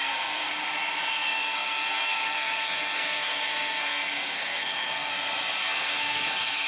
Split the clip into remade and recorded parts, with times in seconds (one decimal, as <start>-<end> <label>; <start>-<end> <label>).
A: 0.0-0.5 remade; 0.5-1.1 recorded; 1.1-5.1 remade; 5.1-5.6 recorded; 5.6-6.7 remade